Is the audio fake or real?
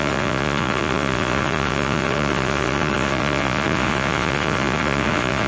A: fake